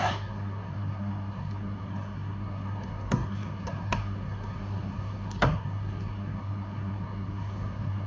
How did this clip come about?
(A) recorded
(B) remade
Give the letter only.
B